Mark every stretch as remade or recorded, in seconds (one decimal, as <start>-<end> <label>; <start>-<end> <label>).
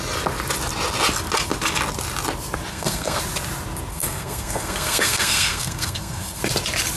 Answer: 0.0-2.7 recorded; 2.7-3.2 remade; 3.2-3.9 recorded; 3.9-6.4 remade; 6.4-7.0 recorded